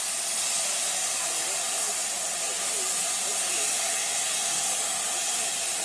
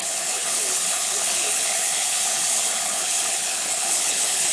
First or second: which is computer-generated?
second